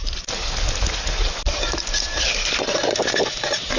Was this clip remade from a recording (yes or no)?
no